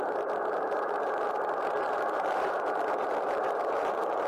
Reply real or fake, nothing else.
fake